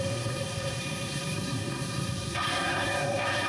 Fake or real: fake